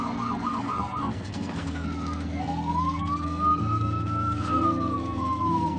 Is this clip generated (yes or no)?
yes